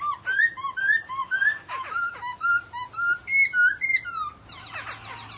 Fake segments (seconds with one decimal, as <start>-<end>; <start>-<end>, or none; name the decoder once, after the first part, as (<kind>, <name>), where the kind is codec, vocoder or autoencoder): 1.2-2.5 (autoencoder, DAC-VAE)